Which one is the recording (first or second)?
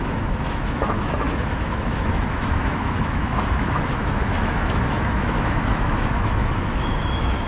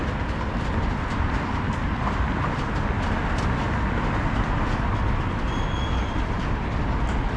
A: second